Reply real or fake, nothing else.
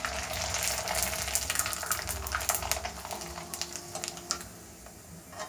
real